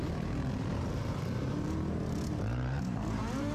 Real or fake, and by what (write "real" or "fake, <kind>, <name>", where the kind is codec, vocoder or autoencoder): fake, vocoder, BigVGAN v2